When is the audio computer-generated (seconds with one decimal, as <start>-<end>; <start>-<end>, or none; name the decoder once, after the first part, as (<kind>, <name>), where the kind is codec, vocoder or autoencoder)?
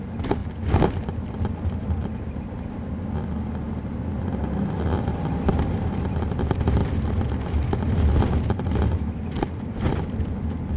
none